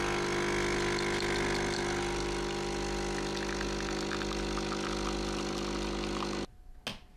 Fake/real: real